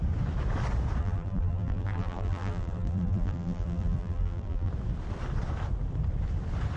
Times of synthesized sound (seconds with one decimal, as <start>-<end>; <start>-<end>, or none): 1.0-4.7